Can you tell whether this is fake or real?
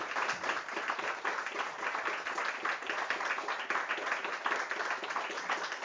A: real